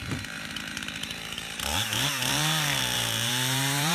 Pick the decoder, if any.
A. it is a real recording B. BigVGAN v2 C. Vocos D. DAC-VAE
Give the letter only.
B